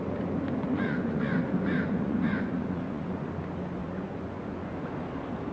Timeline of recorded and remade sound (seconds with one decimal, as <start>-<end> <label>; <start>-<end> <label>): 0.0-0.6 recorded; 0.6-3.3 remade; 3.3-3.8 recorded; 3.8-4.7 remade; 4.7-5.5 recorded